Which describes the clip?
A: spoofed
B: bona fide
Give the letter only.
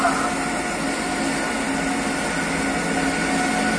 B